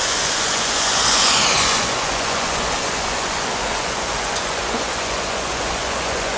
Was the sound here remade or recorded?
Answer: remade